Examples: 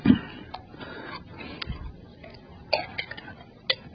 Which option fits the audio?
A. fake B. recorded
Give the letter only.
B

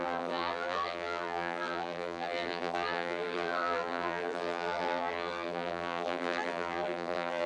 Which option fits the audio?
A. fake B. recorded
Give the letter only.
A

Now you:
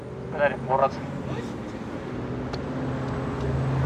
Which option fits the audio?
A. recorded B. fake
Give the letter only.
A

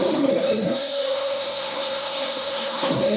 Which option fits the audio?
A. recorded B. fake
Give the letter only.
B